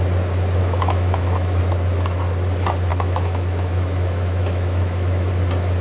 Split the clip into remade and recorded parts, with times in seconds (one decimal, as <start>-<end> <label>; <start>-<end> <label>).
0.0-0.6 recorded; 0.6-1.6 remade; 1.6-2.9 recorded; 2.9-5.3 remade; 5.3-5.8 recorded